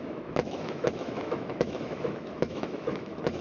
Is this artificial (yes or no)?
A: yes